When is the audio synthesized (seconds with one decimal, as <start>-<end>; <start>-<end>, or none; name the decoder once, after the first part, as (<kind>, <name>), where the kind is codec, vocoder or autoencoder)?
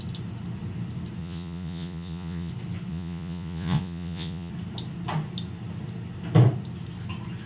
1.2-2.5 (vocoder, Vocos); 2.9-4.5